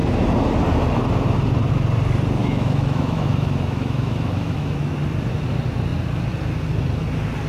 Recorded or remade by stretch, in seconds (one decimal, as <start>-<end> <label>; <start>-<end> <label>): 0.0-2.4 recorded; 2.4-4.9 remade; 4.9-7.5 recorded